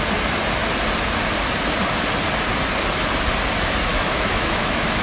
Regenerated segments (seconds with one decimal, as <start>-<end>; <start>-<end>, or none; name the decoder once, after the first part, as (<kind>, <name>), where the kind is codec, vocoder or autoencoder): 3.9-5.0 (autoencoder, DAC-VAE)